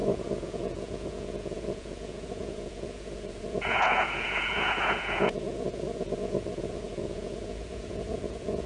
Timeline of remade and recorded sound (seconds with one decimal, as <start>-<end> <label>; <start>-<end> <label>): 0.0-8.7 remade